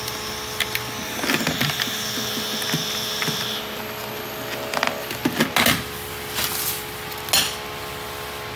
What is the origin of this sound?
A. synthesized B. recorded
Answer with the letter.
B